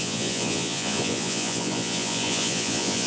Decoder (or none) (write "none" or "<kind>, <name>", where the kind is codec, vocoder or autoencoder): vocoder, Vocos